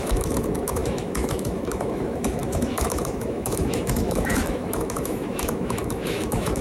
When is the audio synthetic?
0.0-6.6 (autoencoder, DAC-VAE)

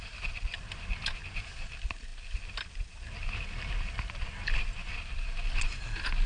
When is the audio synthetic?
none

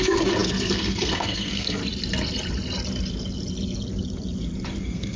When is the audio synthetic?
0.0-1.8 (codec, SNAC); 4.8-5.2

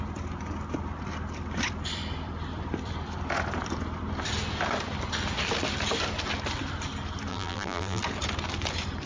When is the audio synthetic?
7.3-8.0 (vocoder, BigVGAN v2)

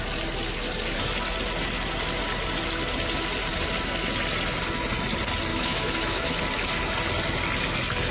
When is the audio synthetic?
5.5-6.4 (autoencoder, DAC-VAE)

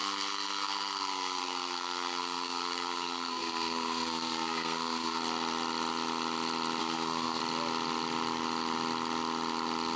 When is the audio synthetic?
0.0-5.2 (codec, SNAC); 6.8-7.4